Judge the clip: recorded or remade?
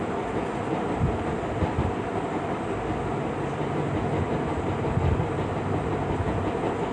recorded